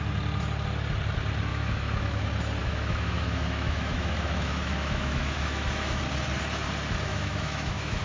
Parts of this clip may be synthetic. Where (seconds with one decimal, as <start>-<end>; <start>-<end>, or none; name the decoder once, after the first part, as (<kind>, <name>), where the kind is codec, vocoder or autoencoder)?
1.5-2.2 (autoencoder, DAC-VAE); 2.6-6.0; 7.1-8.0